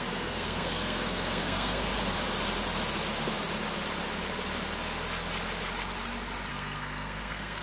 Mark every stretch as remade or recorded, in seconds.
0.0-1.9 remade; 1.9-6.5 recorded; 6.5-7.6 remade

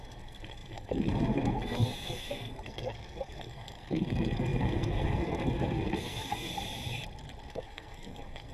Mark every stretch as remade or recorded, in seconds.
0.0-6.5 remade; 6.5-7.5 recorded; 7.5-8.5 remade

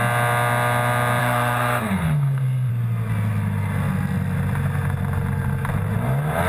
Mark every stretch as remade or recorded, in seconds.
0.0-1.2 recorded; 1.2-2.7 remade; 2.7-6.5 recorded

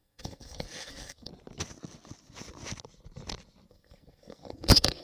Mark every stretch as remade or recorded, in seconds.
0.0-1.3 remade; 1.3-3.7 recorded; 3.7-5.0 remade

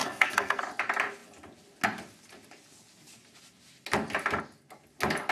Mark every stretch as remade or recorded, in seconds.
0.0-0.6 remade; 0.6-5.3 recorded

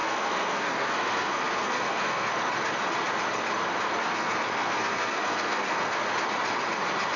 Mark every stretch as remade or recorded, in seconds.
0.0-2.3 remade; 2.3-4.0 recorded; 4.0-6.0 remade; 6.0-7.2 recorded

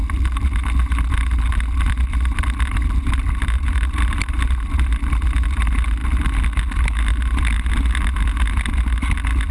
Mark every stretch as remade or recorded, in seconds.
0.0-9.5 recorded

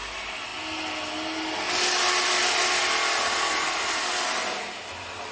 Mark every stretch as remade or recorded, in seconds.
0.0-5.3 recorded